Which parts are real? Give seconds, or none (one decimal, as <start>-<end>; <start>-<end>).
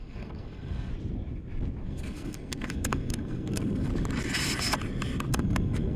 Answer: 0.9-1.8; 3.9-5.3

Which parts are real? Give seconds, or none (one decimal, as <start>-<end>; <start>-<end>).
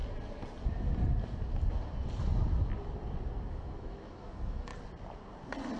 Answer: 0.0-3.5; 4.7-5.8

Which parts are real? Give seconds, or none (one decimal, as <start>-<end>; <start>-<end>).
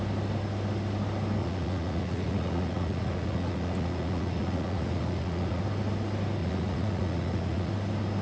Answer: 0.0-1.4; 5.6-6.4; 7.7-8.2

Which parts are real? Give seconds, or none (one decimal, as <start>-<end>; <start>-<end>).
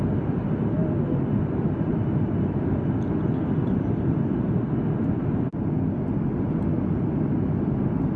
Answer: 0.0-8.2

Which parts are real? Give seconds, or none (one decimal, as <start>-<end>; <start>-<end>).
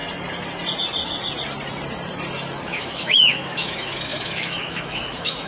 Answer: 0.0-2.6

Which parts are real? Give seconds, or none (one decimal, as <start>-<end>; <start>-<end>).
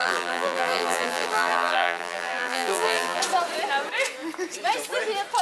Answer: 3.2-5.4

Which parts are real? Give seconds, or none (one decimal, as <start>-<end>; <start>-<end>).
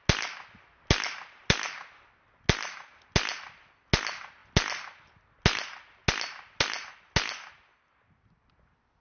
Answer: 0.0-9.0